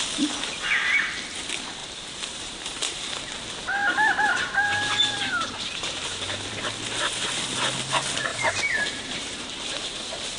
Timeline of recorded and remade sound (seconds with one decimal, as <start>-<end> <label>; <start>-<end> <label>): 0.0-1.8 recorded; 1.8-3.2 remade; 3.2-3.8 recorded; 3.8-6.6 remade; 6.6-8.3 recorded; 8.3-10.4 remade